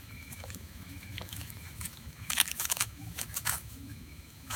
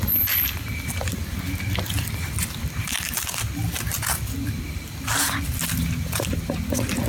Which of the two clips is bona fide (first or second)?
second